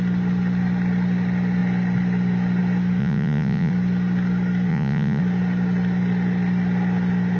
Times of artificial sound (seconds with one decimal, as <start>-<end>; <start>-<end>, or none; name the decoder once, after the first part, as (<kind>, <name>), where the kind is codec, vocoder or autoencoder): 3.0-3.7 (vocoder, Vocos); 4.7-5.2